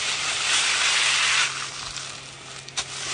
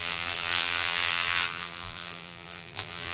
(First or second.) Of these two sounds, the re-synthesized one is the second